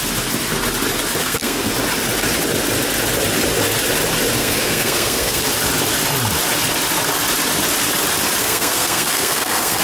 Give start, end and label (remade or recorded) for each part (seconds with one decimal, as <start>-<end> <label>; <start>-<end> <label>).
0.0-1.2 recorded; 1.2-1.7 remade; 1.7-4.4 recorded; 4.4-5.4 remade; 5.4-8.4 recorded; 8.4-9.8 remade